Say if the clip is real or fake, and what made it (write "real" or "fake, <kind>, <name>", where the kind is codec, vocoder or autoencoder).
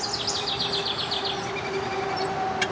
real